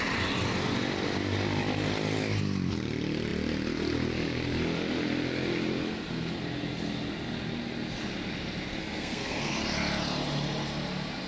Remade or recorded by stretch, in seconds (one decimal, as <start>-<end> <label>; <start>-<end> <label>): 0.0-8.8 recorded; 8.8-9.5 remade; 9.5-11.3 recorded